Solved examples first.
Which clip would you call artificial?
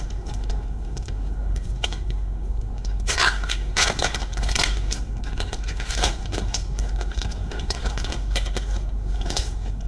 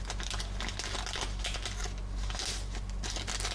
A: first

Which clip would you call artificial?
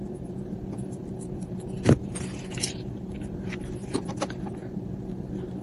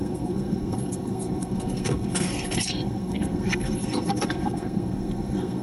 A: second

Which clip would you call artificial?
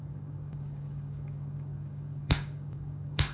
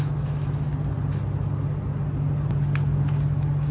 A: first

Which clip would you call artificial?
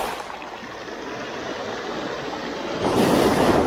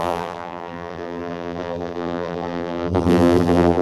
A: second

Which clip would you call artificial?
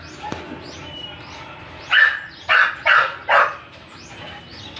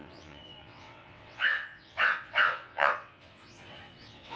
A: second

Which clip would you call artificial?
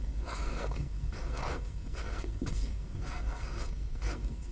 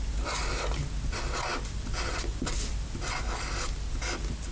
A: first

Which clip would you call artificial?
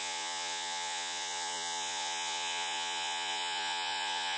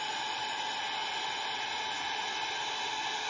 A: first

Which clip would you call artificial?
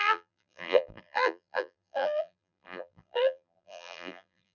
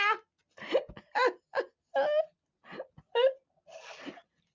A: first